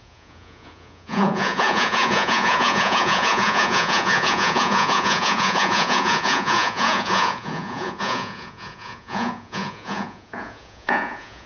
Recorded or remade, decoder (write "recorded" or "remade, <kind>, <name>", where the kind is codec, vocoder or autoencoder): remade, vocoder, Vocos